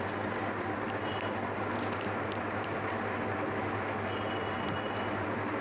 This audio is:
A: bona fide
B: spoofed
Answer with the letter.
A